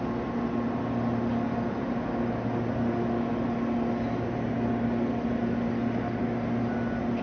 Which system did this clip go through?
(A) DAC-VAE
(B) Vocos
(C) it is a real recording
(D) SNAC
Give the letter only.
C